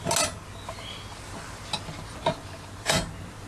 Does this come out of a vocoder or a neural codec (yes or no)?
no